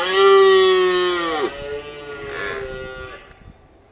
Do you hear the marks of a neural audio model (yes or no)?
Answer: no